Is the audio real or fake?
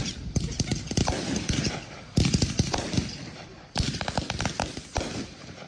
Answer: real